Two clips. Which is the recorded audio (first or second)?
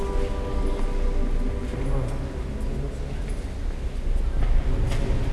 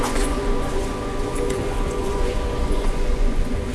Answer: first